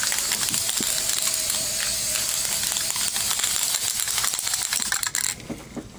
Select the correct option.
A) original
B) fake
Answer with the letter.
A